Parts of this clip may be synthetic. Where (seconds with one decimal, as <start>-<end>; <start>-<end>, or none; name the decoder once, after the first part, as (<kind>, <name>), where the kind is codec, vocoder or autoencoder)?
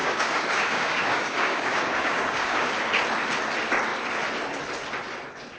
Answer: 0.0-2.7 (codec, DAC)